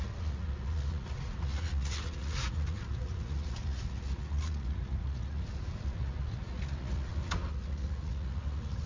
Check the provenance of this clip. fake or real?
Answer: fake